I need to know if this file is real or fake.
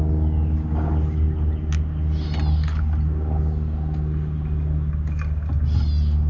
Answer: real